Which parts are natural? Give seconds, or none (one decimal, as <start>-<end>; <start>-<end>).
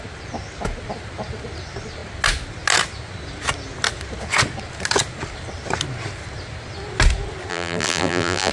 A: 0.0-7.5